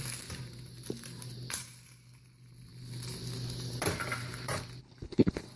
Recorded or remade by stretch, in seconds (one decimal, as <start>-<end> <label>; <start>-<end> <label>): 0.0-4.8 recorded; 4.8-5.6 remade